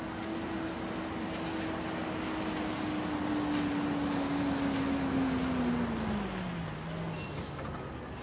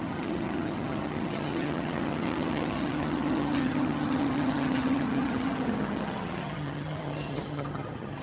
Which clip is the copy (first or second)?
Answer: second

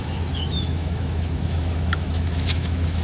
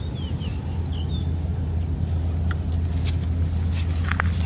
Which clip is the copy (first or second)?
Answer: first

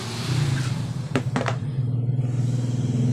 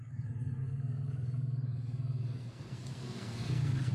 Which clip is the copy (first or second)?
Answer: second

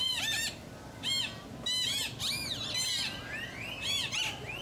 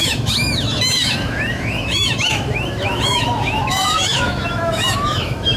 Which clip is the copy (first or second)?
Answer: second